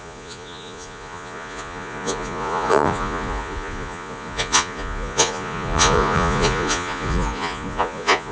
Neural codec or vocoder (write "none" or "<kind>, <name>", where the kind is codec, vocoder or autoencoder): vocoder, Vocos